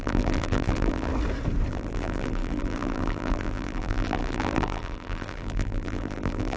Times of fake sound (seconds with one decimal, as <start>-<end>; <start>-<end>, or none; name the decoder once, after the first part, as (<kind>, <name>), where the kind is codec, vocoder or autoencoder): 0.0-1.1 (vocoder, BigVGAN v2); 1.7-6.6